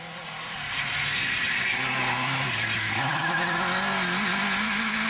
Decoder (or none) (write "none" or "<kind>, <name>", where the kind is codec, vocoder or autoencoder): none